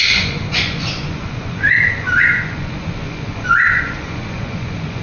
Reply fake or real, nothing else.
fake